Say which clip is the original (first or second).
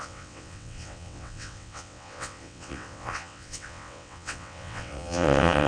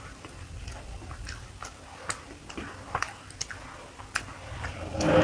second